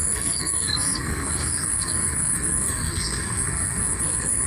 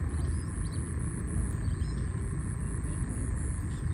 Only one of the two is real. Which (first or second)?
second